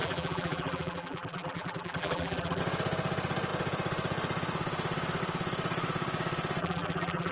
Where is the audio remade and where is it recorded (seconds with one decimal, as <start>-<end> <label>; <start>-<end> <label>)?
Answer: 0.0-2.6 remade; 2.6-6.6 recorded; 6.6-7.3 remade